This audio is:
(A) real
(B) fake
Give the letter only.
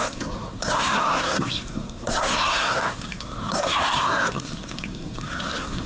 B